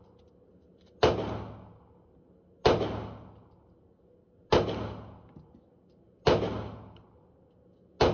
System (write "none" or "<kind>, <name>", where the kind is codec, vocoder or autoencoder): none